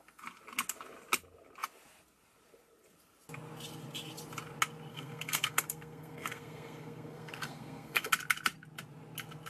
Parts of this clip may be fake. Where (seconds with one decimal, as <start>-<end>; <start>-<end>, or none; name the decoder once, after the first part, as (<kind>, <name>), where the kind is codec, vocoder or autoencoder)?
4.9-8.1 (codec, SNAC)